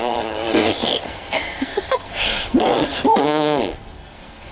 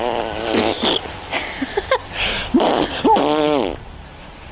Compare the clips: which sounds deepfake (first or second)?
first